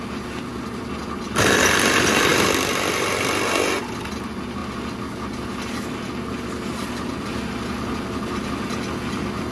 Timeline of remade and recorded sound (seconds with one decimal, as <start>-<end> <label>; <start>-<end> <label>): 0.0-9.5 recorded